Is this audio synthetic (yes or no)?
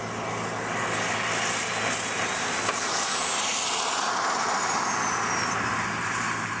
no